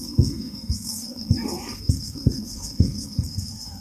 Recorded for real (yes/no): no